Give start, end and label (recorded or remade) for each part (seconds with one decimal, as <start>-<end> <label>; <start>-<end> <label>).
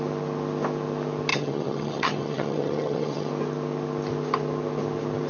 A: 0.0-1.3 recorded; 1.3-3.3 remade; 3.3-5.3 recorded